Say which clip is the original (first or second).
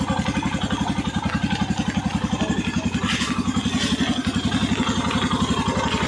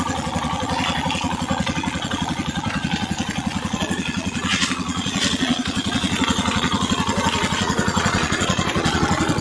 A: first